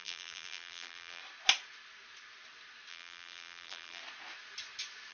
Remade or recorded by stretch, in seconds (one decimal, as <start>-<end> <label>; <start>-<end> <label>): 0.0-1.2 remade; 1.2-2.9 recorded; 2.9-4.0 remade; 4.0-5.1 recorded